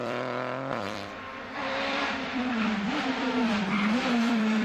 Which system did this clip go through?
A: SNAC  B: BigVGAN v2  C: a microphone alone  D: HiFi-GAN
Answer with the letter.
B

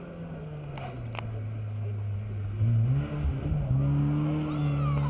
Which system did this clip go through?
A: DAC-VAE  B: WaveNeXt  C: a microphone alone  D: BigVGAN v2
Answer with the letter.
C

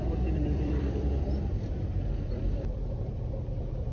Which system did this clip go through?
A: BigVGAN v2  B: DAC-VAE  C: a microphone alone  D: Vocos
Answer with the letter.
A